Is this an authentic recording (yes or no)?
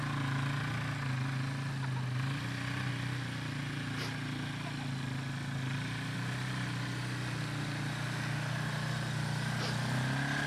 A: yes